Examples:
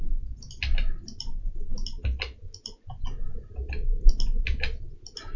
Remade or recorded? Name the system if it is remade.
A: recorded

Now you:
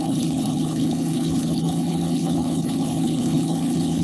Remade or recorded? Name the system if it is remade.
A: remade, codec, HILCodec